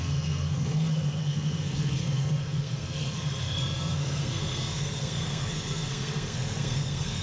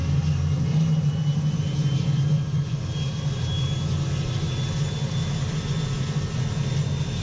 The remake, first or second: first